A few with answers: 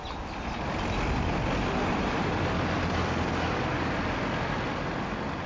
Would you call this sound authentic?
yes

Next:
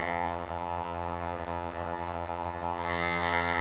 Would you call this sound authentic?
no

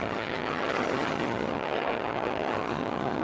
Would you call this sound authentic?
no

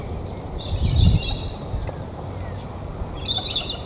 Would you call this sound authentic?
yes